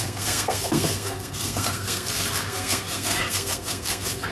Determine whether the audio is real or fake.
fake